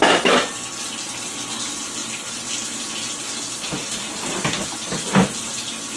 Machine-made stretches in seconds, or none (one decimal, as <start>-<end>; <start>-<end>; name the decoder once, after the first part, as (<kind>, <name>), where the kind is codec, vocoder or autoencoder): 2.0-3.3 (vocoder, BigVGAN v2); 3.8-5.0